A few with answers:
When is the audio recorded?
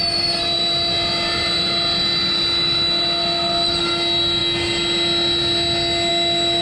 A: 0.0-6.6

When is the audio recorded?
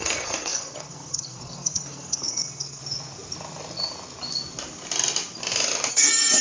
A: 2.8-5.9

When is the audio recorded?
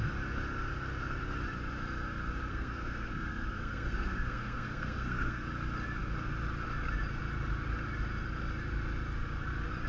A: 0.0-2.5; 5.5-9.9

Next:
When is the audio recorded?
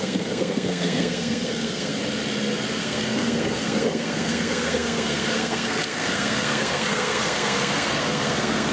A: 2.0-2.8